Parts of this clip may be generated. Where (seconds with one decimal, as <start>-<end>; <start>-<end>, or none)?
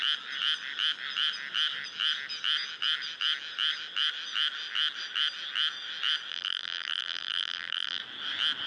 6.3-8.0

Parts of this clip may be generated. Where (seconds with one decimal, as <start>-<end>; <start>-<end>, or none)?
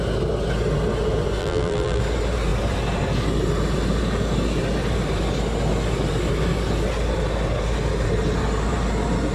1.4-2.0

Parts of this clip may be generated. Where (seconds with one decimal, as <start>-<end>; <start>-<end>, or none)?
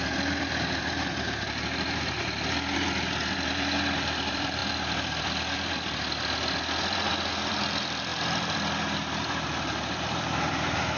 0.0-11.0